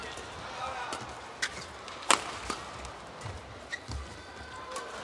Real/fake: real